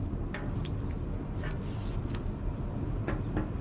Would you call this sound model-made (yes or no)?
no